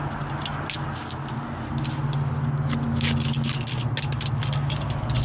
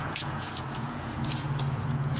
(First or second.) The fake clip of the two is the second